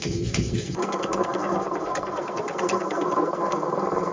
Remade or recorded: remade